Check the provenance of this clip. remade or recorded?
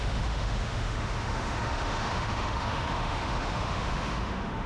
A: remade